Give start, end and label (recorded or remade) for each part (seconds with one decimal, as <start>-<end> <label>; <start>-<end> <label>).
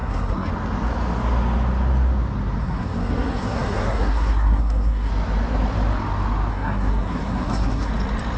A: 0.0-0.5 remade; 0.5-2.6 recorded; 2.6-5.1 remade; 5.1-6.5 recorded; 6.5-7.9 remade; 7.9-8.4 recorded